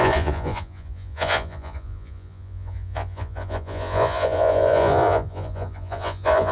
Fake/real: fake